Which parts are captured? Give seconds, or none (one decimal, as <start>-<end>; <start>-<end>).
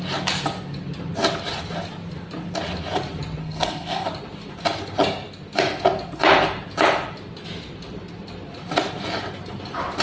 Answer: 0.0-3.4; 4.1-10.0